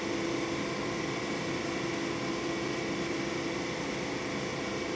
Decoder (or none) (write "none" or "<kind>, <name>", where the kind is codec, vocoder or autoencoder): none